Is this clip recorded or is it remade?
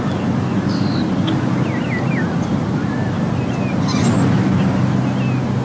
recorded